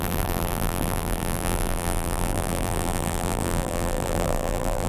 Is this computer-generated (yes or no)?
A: yes